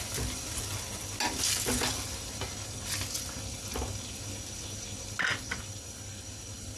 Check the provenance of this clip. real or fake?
real